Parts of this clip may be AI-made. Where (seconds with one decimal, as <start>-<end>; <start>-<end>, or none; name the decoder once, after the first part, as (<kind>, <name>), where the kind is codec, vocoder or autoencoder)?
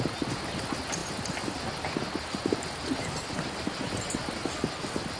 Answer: none